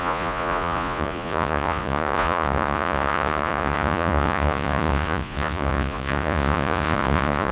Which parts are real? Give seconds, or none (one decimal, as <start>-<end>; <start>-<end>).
none